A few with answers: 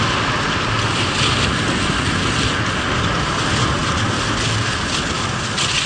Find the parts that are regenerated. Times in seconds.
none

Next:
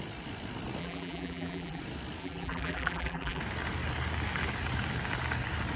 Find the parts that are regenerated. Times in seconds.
0.8-1.8 (vocoder, BigVGAN v2); 2.2-3.4

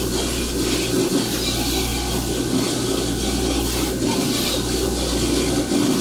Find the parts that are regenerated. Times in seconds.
none

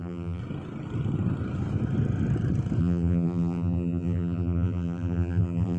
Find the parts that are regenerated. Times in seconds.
0.0-0.4 (vocoder, BigVGAN v2); 2.8-5.8